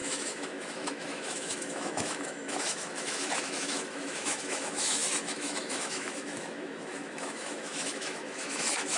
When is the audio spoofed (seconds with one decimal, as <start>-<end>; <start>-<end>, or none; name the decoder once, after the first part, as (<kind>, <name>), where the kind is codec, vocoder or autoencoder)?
0.0-9.0 (autoencoder, DAC-VAE)